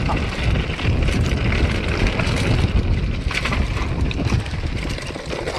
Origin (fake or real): real